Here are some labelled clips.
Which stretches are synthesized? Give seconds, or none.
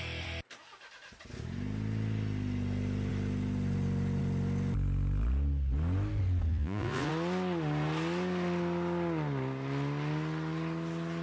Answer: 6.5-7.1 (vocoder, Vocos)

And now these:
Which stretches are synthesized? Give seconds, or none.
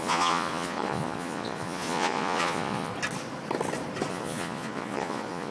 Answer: 0.0-2.9 (vocoder, Vocos); 4.1-5.5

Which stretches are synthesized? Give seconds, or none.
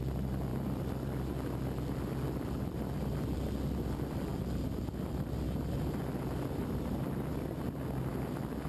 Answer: none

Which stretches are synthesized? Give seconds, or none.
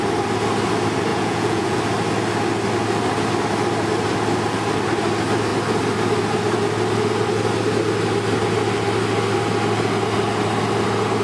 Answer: 1.1-1.8 (vocoder, Vocos)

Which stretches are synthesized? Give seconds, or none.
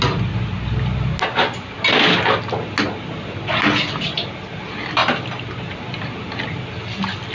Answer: none